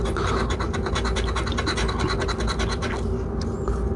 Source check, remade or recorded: recorded